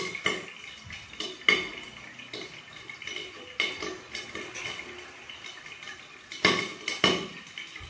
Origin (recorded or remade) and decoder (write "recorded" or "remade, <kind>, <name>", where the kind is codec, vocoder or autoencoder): recorded